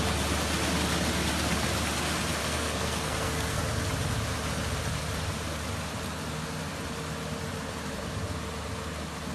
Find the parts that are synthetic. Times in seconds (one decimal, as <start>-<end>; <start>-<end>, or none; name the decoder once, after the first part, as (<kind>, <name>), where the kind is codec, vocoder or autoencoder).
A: 2.4-3.6 (codec, SNAC)